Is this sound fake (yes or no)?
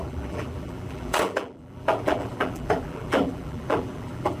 yes